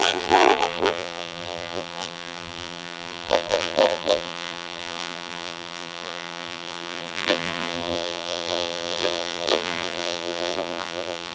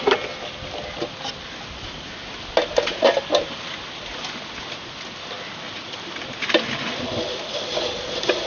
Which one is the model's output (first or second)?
first